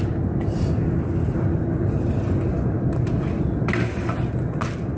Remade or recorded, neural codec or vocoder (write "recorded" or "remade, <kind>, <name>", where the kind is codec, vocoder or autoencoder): recorded